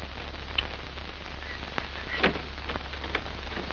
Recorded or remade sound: recorded